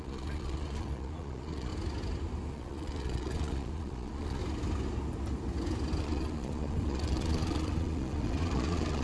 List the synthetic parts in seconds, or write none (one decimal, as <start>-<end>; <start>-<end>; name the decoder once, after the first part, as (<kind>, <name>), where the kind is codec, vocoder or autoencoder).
0.0-1.7 (vocoder, Vocos); 2.5-4.4; 6.0-9.0